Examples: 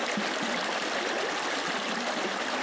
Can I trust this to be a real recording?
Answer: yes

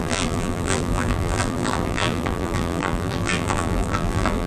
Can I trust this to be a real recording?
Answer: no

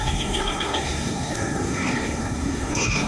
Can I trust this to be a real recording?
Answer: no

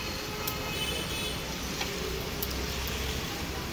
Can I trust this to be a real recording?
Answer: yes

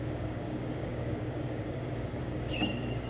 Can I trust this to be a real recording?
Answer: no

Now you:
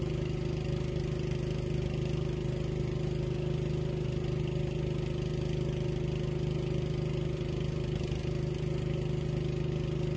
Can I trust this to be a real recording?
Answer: yes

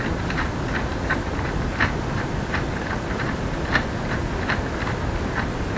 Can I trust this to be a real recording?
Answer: yes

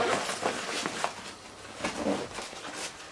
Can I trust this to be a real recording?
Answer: yes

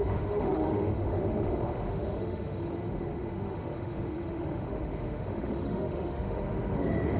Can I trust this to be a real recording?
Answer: no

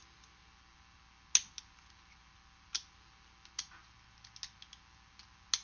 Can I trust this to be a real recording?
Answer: yes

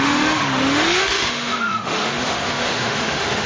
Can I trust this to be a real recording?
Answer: no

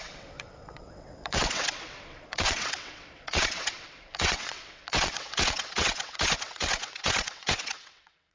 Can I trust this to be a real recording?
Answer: no